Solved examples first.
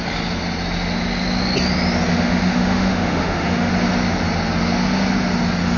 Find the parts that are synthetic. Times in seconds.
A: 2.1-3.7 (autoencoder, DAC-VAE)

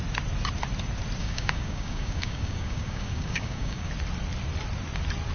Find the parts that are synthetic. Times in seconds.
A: 1.2-3.9 (codec, DAC)

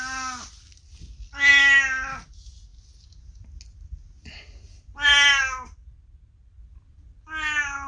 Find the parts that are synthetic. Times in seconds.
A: none

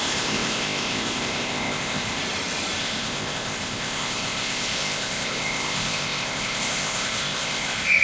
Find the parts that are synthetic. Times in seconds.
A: 0.0-2.2 (codec, ZipCodec); 2.8-8.0